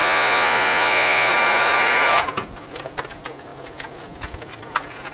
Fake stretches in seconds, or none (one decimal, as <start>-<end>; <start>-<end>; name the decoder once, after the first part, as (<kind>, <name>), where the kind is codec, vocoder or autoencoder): 0.0-1.3 (vocoder, Vocos)